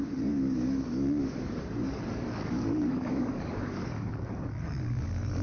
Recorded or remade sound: remade